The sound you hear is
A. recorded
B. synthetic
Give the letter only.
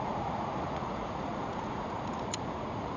B